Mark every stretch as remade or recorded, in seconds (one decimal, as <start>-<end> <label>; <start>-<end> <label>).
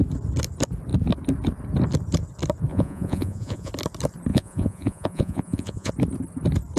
0.0-2.7 recorded; 2.7-3.7 remade; 3.7-4.3 recorded; 4.3-5.9 remade; 5.9-6.8 recorded